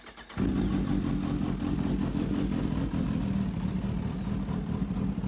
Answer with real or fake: real